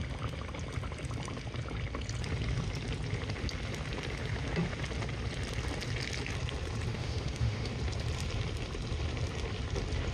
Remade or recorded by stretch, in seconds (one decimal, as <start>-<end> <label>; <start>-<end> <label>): 0.0-6.9 recorded; 6.9-7.7 remade; 7.7-10.1 recorded